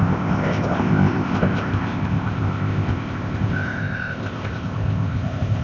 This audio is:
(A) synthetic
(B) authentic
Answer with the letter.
A